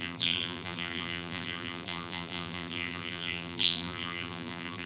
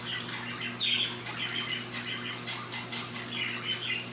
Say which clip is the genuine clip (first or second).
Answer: second